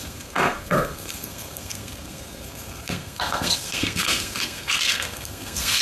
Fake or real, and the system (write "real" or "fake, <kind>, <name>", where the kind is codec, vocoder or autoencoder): fake, codec, SNAC